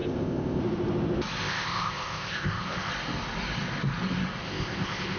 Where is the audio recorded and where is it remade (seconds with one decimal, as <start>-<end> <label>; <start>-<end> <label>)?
0.0-0.6 remade; 0.6-1.4 recorded; 1.4-2.9 remade; 2.9-4.4 recorded; 4.4-5.2 remade

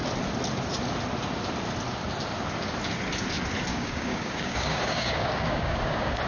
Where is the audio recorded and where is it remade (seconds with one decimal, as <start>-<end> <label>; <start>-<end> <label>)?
0.0-3.7 recorded; 3.7-6.3 remade

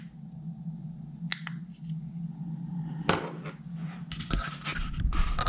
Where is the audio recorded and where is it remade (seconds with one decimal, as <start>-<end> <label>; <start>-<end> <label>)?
0.0-5.5 recorded

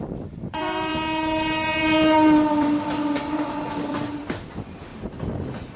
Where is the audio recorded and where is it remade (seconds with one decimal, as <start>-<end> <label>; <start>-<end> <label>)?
0.0-0.9 remade; 0.9-1.8 recorded; 1.8-4.9 remade; 4.9-5.8 recorded